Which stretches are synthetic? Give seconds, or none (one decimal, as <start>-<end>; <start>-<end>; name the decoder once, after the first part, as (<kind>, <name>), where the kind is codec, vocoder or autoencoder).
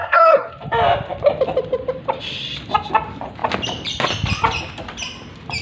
0.0-0.5 (codec, SNAC)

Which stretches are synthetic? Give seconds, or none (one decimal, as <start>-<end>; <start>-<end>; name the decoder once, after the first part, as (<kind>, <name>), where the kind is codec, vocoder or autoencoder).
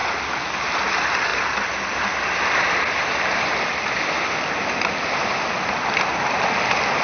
none